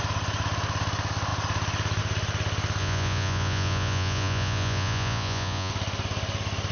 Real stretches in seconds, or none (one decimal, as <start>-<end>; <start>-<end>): 0.0-2.8; 5.7-6.7